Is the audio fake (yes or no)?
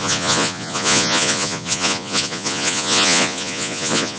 yes